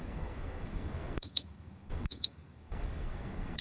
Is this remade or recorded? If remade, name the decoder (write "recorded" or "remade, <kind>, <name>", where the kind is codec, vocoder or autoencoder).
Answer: remade, codec, SNAC